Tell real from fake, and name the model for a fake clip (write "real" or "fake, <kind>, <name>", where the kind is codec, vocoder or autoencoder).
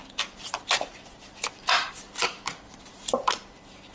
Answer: fake, vocoder, BigVGAN v2